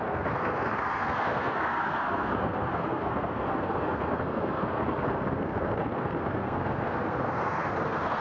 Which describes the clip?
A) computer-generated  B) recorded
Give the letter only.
A